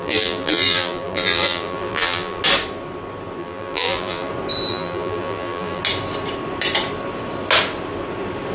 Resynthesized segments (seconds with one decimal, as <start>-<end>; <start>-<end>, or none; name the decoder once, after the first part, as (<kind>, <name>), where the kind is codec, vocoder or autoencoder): 0.0-2.4 (vocoder, BigVGAN v2); 3.4-4.3; 4.7-5.8